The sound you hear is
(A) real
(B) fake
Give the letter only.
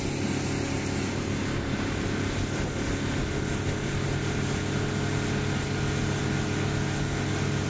A